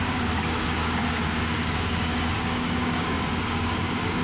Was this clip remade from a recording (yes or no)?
yes